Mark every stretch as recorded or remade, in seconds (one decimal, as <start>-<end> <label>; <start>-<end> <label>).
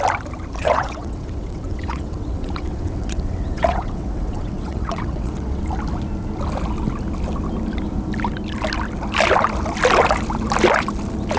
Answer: 0.0-0.6 recorded; 0.6-5.6 remade; 5.6-11.4 recorded